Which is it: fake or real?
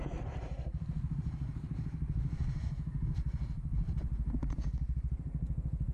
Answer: fake